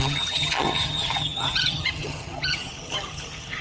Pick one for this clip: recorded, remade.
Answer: remade